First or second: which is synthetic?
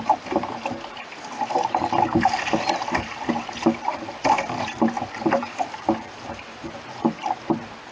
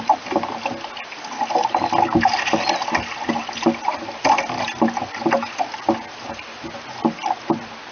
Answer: first